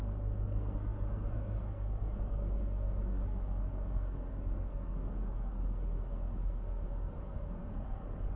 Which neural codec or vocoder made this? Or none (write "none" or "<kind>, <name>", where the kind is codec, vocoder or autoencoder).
codec, SNAC